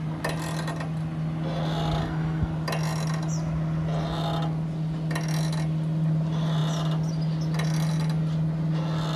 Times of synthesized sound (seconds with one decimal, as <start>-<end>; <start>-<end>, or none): 2.0-2.5